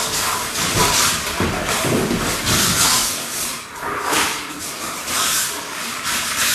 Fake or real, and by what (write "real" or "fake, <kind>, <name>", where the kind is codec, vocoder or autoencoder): fake, codec, DAC